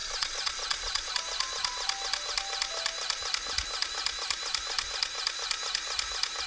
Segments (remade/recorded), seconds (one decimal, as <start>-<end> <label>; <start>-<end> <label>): 0.0-1.1 remade; 1.1-6.5 recorded